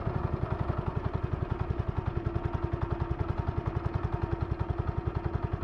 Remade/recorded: recorded